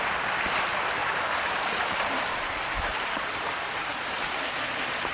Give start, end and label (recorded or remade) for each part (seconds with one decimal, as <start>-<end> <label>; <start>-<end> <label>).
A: 0.0-1.0 recorded; 1.0-2.0 remade; 2.0-2.9 recorded; 2.9-3.8 remade; 3.8-5.1 recorded